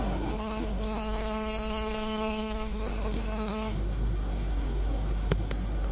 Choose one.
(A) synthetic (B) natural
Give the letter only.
A